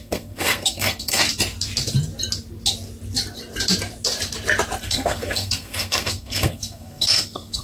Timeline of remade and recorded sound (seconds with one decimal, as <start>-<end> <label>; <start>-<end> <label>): 0.0-1.2 remade; 1.2-4.8 recorded; 4.8-7.6 remade